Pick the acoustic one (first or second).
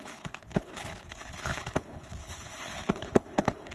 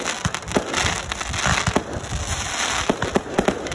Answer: second